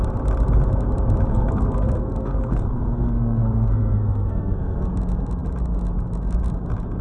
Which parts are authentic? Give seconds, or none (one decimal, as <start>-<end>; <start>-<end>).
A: 0.0-1.3; 4.9-7.0

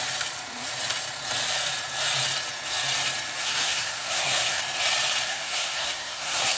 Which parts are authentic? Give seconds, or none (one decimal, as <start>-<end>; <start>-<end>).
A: 0.0-3.4; 4.6-5.3

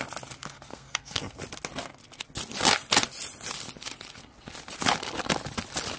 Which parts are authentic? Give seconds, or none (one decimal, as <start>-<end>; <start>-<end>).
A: 0.0-0.7; 1.4-6.0